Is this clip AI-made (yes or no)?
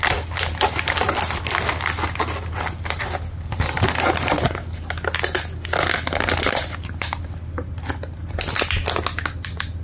no